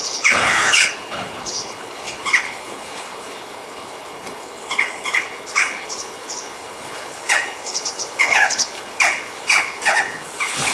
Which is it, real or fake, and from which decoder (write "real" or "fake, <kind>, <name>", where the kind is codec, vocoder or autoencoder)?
fake, codec, HILCodec